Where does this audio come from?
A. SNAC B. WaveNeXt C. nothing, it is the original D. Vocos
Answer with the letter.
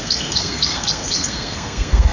A